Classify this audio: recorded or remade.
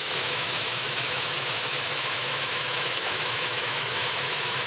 remade